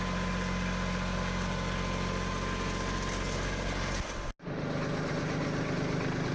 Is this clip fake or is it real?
real